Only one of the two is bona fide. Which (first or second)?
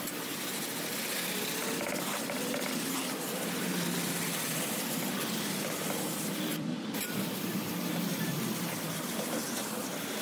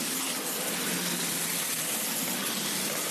second